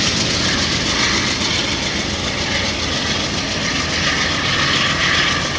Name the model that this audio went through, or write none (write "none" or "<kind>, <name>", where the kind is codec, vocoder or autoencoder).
none